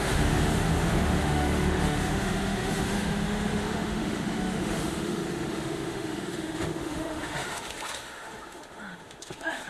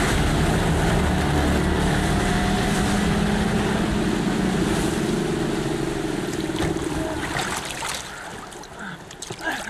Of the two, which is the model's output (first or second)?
first